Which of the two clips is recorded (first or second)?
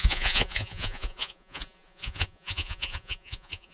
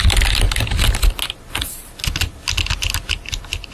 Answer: second